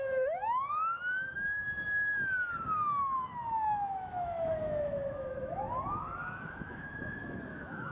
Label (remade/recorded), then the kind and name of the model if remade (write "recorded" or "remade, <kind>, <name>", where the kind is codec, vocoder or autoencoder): remade, autoencoder, DAC-VAE